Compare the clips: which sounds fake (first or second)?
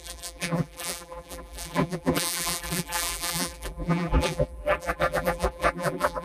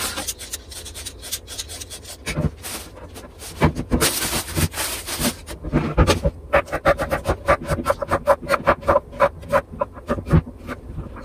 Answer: first